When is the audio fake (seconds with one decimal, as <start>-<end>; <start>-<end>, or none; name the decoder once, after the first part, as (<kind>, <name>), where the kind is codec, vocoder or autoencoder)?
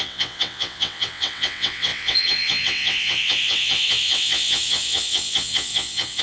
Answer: 0.0-6.2 (vocoder, WaveNeXt)